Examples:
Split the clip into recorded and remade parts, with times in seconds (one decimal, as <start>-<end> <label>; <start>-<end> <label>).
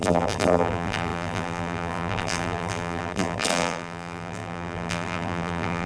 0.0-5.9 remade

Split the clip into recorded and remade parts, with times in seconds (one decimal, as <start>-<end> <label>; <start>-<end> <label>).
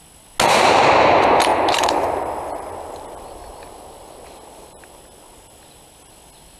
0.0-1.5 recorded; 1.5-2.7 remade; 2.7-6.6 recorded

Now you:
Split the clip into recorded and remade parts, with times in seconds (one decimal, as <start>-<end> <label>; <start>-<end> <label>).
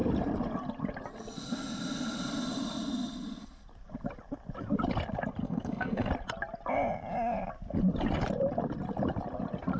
0.0-5.4 recorded; 5.4-6.1 remade; 6.1-9.8 recorded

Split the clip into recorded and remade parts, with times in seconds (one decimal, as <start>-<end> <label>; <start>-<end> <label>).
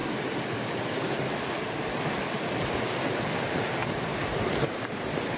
0.0-2.3 recorded; 2.3-3.8 remade; 3.8-4.4 recorded; 4.4-5.4 remade